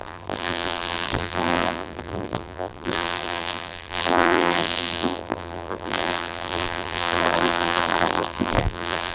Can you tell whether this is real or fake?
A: fake